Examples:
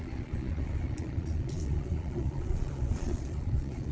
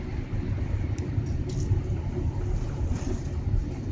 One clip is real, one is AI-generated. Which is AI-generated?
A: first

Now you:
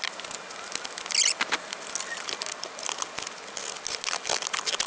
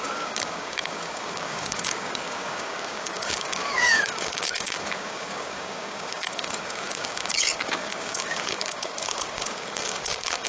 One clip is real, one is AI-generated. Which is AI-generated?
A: second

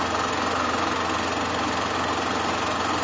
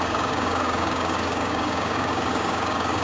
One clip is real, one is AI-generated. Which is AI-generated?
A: second